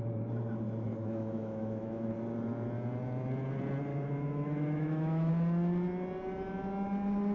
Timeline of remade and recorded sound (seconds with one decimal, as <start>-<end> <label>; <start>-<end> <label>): 0.0-1.0 recorded; 1.0-2.1 remade; 2.1-3.9 recorded; 3.9-5.3 remade; 5.3-7.3 recorded

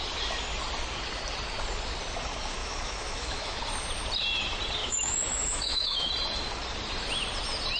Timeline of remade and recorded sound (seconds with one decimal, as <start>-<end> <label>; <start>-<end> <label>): 0.0-2.6 recorded; 2.6-3.6 remade; 3.6-4.8 recorded; 4.8-6.1 remade; 6.1-7.8 recorded